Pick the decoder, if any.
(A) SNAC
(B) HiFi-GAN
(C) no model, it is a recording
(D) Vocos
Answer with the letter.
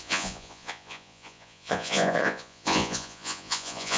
D